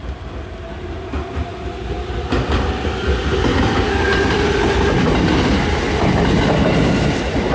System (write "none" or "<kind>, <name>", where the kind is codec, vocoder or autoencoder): none